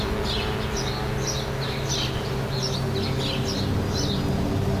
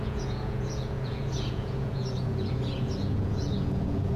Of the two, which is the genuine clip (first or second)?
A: first